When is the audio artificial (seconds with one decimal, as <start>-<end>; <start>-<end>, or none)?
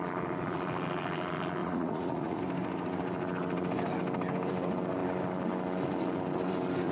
1.6-2.4